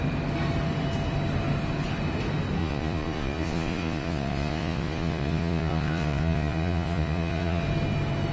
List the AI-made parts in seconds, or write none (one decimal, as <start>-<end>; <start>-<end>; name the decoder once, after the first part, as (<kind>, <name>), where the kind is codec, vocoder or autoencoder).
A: 2.6-7.6 (vocoder, Vocos)